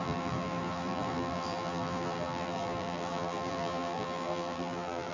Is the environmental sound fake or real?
fake